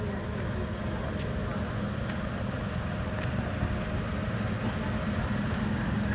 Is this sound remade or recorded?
recorded